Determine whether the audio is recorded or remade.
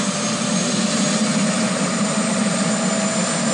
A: recorded